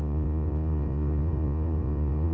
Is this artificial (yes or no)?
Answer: yes